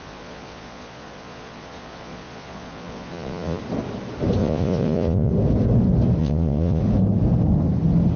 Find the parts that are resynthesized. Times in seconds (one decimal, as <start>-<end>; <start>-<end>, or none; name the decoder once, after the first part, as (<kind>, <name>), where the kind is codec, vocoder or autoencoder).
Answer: 0.0-3.6 (vocoder, Vocos); 4.4-5.3; 6.2-6.8